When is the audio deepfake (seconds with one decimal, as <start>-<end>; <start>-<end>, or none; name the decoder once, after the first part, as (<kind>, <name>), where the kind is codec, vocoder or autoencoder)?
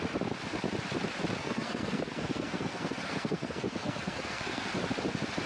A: 1.4-4.7 (codec, SNAC)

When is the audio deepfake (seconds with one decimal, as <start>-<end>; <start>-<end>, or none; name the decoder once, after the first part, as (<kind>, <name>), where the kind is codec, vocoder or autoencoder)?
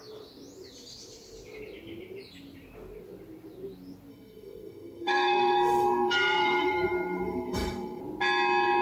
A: 4.1-8.0 (codec, SNAC)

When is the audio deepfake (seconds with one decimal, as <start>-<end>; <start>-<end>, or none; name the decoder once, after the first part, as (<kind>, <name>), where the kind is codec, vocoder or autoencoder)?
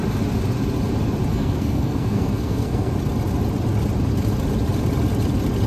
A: 1.3-2.9 (codec, SNAC)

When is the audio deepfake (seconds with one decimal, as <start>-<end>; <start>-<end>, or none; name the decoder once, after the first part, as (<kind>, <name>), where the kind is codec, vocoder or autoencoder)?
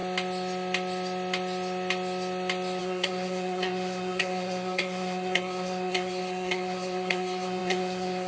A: 2.8-8.3 (codec, SNAC)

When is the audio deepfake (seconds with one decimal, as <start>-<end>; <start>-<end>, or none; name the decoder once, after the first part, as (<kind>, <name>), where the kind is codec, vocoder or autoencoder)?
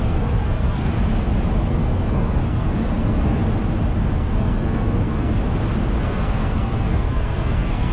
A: 0.0-0.9 (codec, SNAC); 1.7-3.4; 4.1-5.4; 6.0-7.9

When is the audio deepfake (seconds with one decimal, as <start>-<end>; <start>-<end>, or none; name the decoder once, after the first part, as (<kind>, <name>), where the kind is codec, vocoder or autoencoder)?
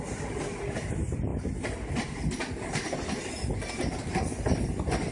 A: none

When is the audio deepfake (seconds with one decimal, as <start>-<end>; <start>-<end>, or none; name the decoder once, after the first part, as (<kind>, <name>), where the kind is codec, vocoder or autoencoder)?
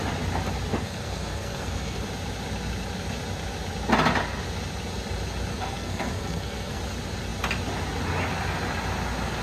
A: 0.7-2.0 (codec, SNAC); 5.5-6.8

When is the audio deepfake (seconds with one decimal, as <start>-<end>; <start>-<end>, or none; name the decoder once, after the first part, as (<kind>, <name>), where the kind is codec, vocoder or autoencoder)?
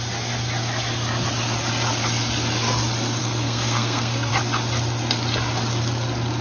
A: 3.2-4.3 (codec, SNAC)